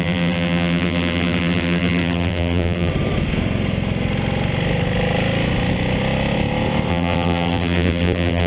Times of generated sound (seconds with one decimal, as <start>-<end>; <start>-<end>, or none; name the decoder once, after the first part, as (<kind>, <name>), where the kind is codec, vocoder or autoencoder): 0.0-2.9 (vocoder, BigVGAN v2); 6.9-8.5